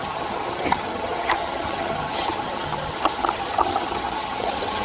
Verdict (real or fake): fake